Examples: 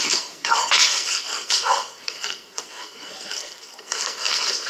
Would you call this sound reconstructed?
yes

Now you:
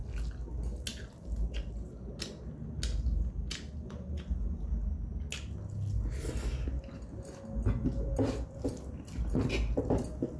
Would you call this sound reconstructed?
no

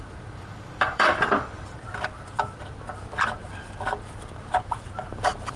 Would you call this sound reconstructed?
yes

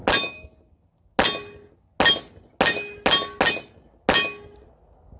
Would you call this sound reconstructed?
no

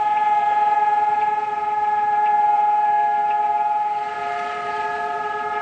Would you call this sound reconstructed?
yes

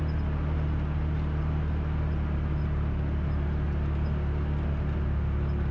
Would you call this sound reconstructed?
no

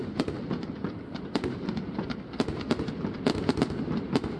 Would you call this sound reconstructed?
no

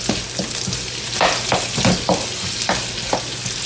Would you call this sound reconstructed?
no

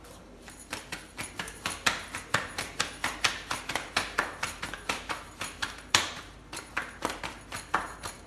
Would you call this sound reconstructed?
yes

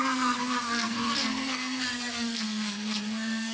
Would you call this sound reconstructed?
yes